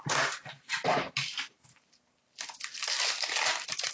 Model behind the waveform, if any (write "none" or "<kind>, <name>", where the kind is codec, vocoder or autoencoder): none